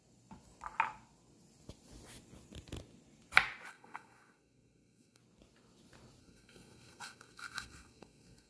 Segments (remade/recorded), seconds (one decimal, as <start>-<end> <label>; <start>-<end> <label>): 0.0-3.7 recorded; 3.7-5.2 remade; 5.2-6.2 recorded; 6.2-8.5 remade